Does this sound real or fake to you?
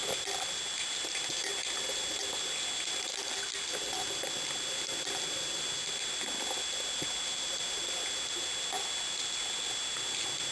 real